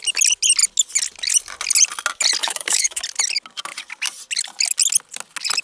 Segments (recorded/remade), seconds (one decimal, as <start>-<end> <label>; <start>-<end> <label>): 0.0-2.4 recorded; 2.4-3.0 remade; 3.0-5.6 recorded